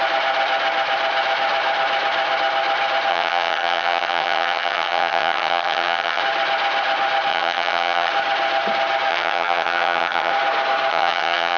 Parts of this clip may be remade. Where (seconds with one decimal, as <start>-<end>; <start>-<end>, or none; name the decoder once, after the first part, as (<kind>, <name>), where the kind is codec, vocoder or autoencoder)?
3.1-6.2 (vocoder, HiFi-GAN); 7.3-8.1; 9.1-10.3; 10.9-11.6